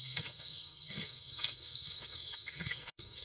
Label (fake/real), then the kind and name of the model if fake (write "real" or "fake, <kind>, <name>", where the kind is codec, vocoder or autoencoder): fake, codec, SNAC